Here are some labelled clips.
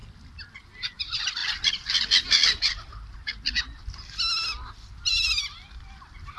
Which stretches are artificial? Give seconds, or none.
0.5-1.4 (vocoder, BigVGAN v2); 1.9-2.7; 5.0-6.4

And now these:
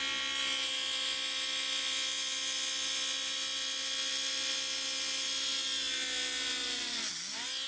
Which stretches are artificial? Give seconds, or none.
none

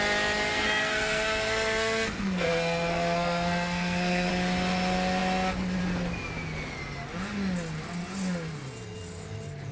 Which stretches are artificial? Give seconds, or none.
0.5-4.3 (codec, SNAC)